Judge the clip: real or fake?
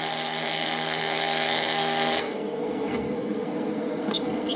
fake